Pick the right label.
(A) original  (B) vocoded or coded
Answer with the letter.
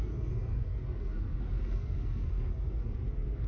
B